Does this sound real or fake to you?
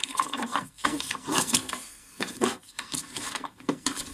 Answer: fake